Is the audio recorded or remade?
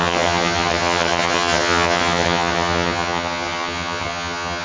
remade